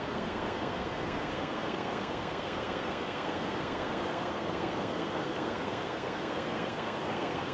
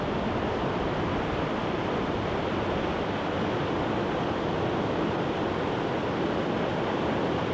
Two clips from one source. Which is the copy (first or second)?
first